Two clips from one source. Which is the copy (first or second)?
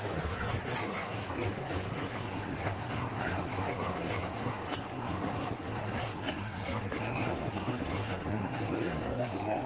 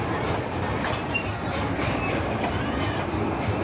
first